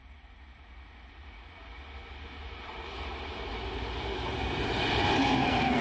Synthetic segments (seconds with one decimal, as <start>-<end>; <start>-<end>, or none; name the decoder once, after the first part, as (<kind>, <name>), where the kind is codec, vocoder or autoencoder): 5.2-5.8 (codec, SNAC)